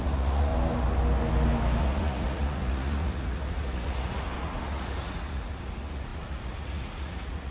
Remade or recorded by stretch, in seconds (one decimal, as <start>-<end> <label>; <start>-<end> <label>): 0.0-0.5 remade; 0.5-1.8 recorded; 1.8-7.5 remade